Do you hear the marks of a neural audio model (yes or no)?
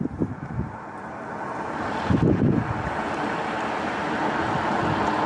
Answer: no